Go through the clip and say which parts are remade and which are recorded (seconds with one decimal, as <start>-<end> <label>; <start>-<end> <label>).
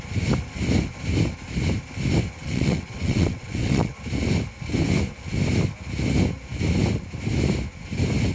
0.0-2.4 recorded; 2.4-3.9 remade; 3.9-8.3 recorded